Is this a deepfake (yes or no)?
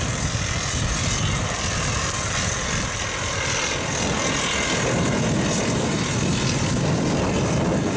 no